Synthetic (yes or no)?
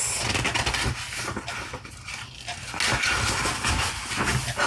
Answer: no